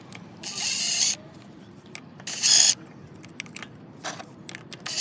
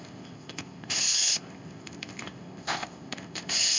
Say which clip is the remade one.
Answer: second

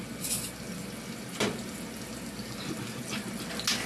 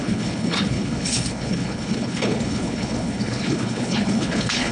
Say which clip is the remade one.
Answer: second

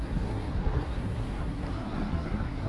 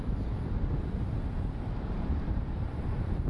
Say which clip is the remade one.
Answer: first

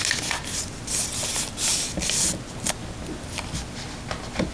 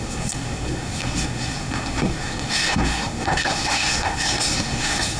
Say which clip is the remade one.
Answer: second